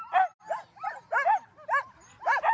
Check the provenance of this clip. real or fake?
real